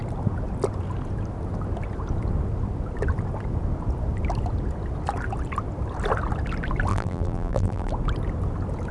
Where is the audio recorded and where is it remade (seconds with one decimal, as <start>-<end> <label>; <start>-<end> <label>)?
0.0-6.9 recorded; 6.9-7.9 remade; 7.9-8.9 recorded